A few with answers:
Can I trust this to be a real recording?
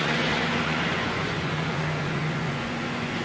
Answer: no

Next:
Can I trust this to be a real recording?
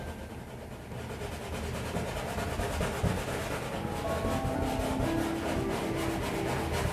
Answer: yes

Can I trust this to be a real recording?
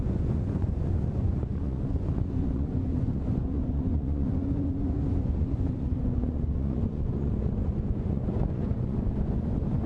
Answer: no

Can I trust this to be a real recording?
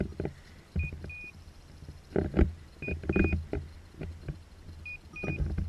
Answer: yes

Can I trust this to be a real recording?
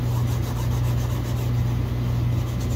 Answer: yes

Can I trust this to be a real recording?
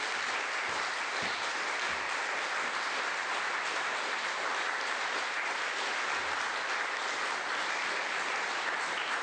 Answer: no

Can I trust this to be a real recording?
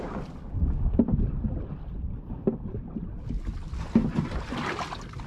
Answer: yes